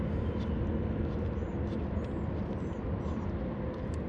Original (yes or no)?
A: yes